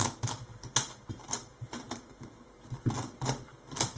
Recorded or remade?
remade